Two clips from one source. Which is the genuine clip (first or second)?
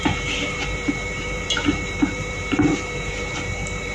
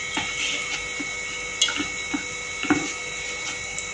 second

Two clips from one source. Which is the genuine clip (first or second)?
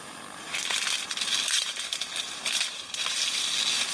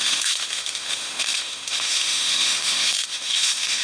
first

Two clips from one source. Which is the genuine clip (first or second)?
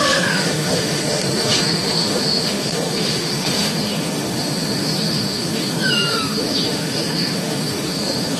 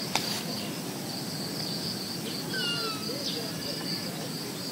second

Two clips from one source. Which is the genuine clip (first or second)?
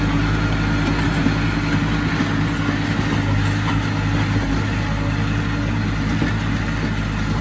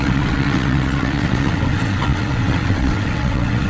first